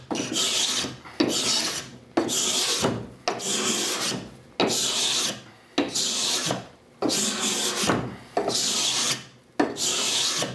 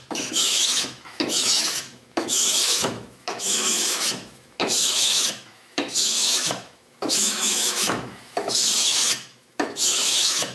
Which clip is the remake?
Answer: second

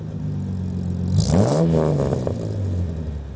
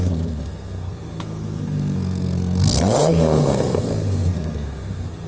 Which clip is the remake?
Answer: second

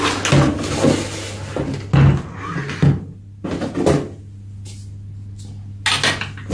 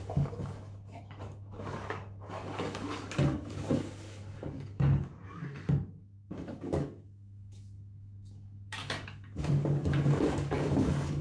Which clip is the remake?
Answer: second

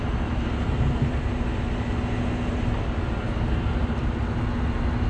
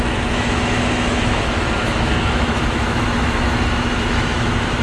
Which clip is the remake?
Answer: second